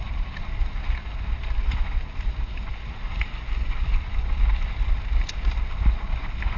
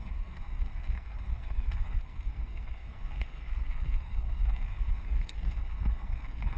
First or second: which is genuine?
first